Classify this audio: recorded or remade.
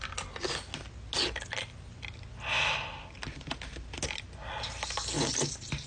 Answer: recorded